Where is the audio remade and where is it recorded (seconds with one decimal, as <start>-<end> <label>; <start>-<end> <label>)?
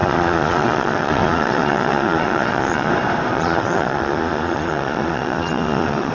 0.0-2.9 remade; 2.9-3.3 recorded; 3.3-6.1 remade